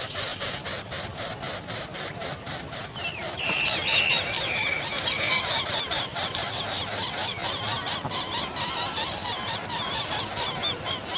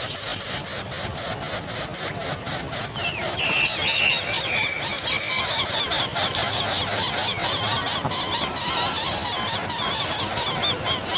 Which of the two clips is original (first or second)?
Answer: second